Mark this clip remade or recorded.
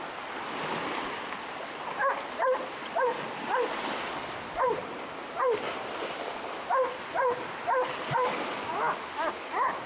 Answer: recorded